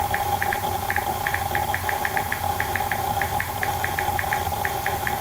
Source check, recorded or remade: remade